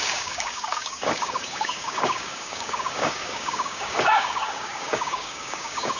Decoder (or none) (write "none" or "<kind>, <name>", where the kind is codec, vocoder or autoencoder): codec, DAC